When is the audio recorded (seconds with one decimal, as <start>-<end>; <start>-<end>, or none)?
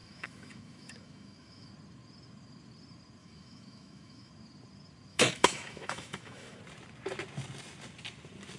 1.7-3.2; 4.3-5.1; 6.6-8.6